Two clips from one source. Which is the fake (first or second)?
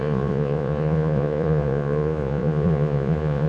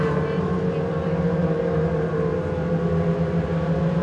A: first